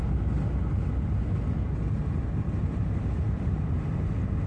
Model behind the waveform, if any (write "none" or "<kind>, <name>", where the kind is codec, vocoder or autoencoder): none